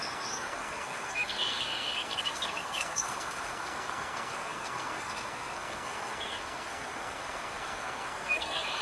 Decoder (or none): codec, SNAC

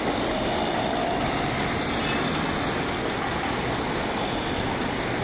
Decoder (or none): none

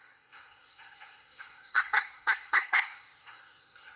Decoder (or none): codec, SNAC